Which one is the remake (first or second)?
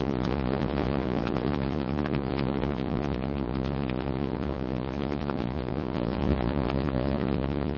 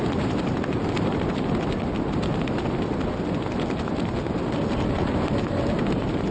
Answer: first